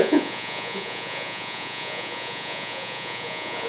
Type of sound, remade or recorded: remade